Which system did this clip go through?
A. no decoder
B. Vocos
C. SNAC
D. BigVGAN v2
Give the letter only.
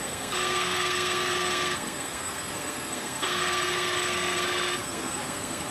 C